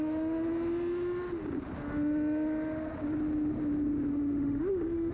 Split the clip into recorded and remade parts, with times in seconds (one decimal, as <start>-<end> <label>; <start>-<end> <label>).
0.0-4.1 recorded; 4.1-5.1 remade